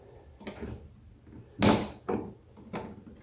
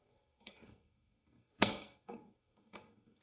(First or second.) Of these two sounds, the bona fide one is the first